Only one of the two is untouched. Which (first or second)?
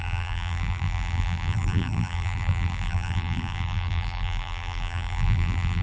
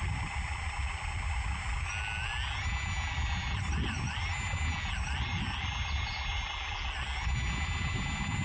second